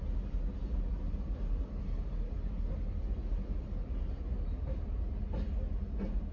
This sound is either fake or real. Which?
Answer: real